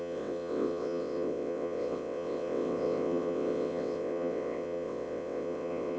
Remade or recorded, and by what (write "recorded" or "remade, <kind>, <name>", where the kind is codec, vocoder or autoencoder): remade, vocoder, WaveNeXt